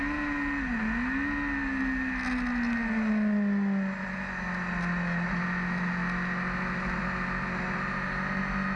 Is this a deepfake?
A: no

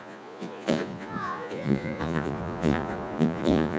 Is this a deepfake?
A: yes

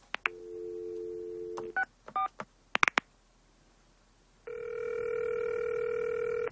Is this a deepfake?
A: no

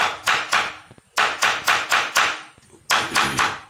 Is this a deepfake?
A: no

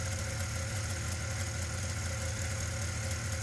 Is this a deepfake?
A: no